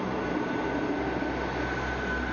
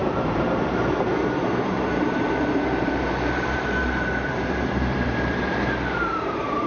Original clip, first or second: first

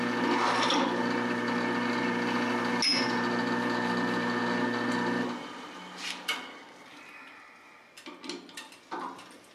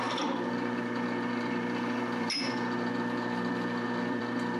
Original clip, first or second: first